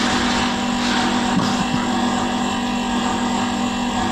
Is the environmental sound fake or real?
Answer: real